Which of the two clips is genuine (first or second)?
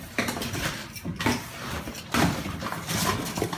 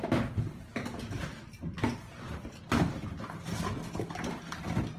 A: second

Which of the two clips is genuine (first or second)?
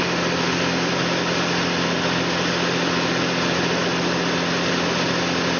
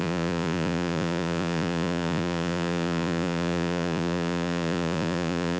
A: first